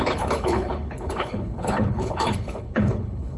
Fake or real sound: fake